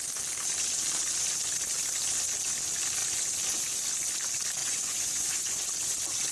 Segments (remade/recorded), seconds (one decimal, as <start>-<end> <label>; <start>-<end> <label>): 0.0-4.6 recorded; 4.6-5.6 remade; 5.6-6.3 recorded